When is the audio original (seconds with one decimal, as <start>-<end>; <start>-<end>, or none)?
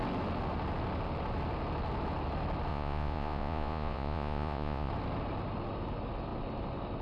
0.0-2.7; 4.9-7.0